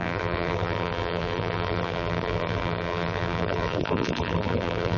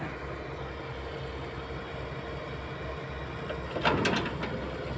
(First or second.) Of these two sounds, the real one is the second